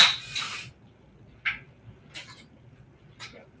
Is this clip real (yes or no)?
yes